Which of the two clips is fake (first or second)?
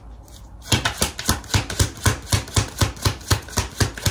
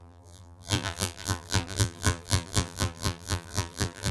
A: second